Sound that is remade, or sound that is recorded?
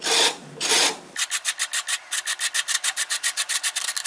recorded